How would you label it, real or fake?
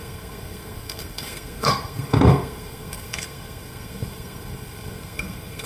fake